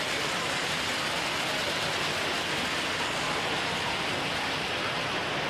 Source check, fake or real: real